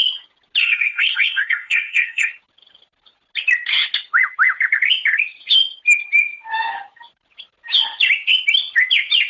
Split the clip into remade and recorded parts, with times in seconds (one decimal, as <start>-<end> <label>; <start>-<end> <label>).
0.0-0.6 recorded; 0.6-2.3 remade; 2.3-9.3 recorded